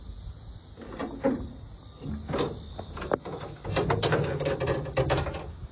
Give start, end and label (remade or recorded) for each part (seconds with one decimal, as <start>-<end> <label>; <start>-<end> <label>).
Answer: 0.0-5.7 recorded